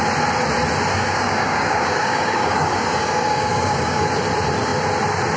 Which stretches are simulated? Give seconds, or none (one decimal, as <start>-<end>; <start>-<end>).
0.9-4.1